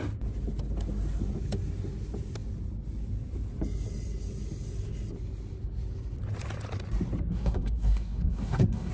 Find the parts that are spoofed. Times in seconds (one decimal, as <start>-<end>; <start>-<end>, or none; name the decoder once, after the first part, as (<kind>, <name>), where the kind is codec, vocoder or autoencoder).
7.3-8.9 (codec, SNAC)